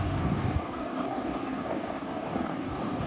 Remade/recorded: remade